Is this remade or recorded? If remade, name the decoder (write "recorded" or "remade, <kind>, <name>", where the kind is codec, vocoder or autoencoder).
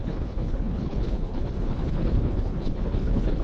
remade, codec, HILCodec